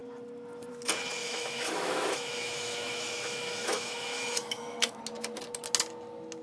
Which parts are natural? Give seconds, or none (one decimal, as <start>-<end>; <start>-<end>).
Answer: 0.0-1.2; 5.0-6.4